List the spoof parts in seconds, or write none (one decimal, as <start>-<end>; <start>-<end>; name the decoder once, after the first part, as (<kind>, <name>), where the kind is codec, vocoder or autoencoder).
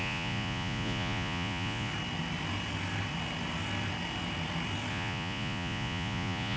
0.0-1.9 (vocoder, Vocos); 4.9-6.6